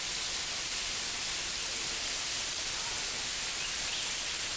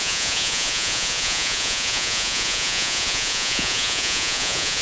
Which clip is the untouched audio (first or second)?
first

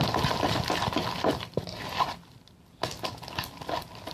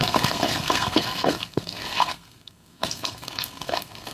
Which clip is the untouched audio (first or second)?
first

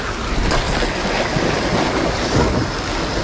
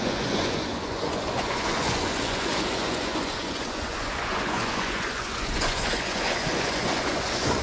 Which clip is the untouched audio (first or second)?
first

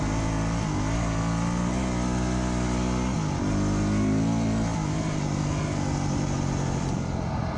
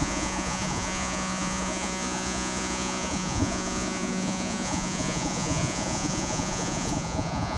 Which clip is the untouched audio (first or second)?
first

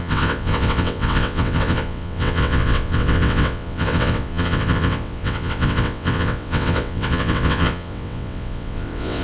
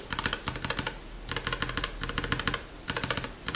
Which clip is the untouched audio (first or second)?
second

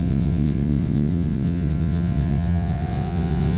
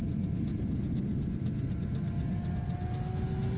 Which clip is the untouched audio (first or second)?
second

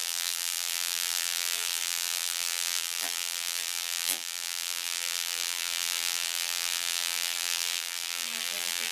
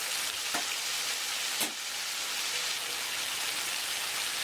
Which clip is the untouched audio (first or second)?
second